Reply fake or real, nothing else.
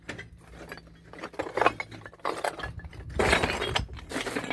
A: real